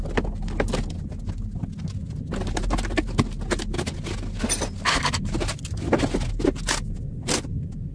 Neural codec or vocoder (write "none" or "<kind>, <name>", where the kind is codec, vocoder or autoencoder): none